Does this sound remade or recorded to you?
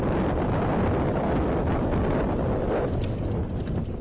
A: recorded